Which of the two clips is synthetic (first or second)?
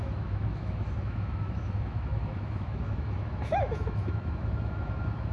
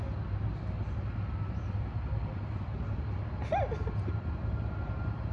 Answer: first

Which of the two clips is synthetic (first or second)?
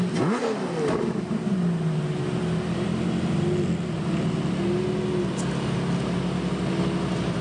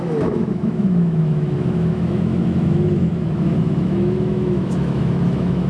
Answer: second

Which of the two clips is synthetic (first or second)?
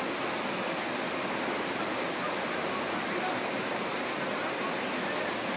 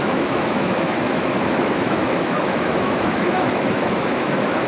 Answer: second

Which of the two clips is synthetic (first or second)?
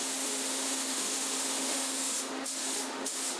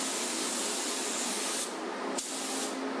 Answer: first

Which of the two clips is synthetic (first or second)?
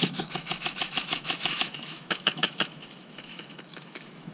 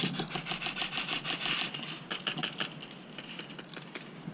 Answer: first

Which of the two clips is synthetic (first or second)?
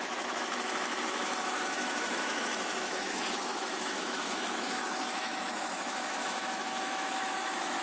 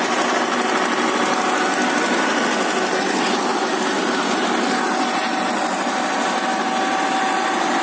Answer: first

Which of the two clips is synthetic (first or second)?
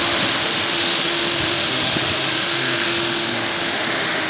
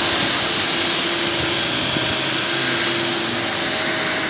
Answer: first